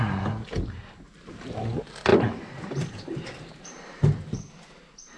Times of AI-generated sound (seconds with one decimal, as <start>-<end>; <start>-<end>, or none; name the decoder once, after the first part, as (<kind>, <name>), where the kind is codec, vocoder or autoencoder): none